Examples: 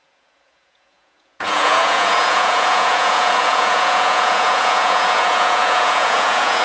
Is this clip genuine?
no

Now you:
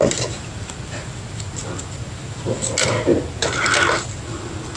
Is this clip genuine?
yes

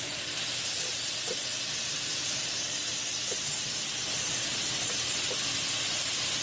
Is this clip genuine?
yes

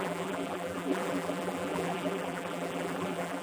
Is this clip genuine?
no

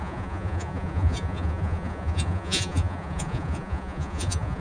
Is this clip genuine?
no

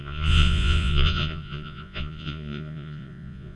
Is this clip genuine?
no